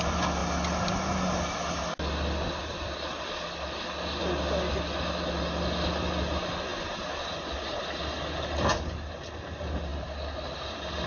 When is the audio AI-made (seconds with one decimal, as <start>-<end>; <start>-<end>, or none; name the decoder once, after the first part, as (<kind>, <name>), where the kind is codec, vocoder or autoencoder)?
none